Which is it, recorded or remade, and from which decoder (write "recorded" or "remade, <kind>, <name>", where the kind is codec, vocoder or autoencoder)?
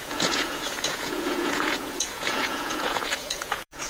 remade, vocoder, Vocos